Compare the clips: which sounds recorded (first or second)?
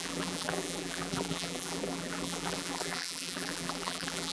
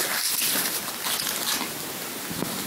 second